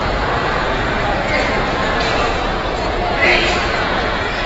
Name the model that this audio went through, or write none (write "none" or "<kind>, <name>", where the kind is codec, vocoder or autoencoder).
vocoder, Vocos